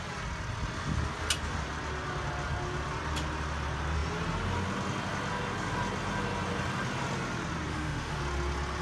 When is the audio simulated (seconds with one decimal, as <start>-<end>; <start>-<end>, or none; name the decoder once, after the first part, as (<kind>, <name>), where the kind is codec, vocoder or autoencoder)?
7.7-8.2 (autoencoder, DAC-VAE)